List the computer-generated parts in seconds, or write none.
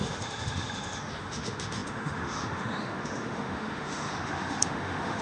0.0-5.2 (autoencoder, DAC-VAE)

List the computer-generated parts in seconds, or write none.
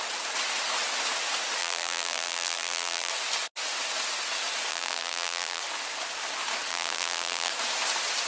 1.6-3.1 (vocoder, BigVGAN v2); 4.7-5.6; 6.7-7.5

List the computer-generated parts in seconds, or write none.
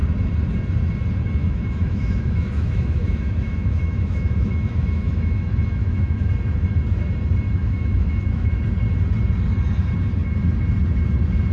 1.4-6.3 (autoencoder, DAC-VAE); 7.6-8.6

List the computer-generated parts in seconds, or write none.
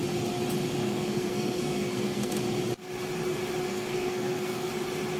0.8-2.4 (codec, SNAC); 3.7-4.7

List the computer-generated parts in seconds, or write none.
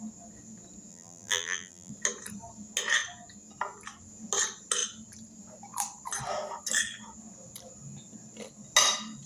0.9-1.9 (vocoder, BigVGAN v2)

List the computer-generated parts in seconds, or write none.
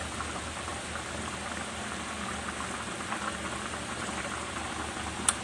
none